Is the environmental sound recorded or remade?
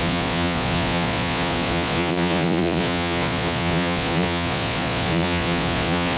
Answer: remade